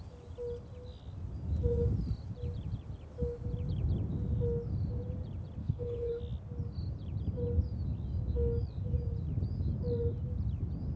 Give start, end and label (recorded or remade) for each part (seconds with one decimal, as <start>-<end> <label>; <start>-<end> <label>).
0.0-5.6 recorded; 5.6-6.2 remade; 6.2-11.0 recorded